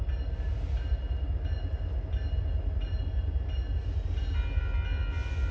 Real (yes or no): yes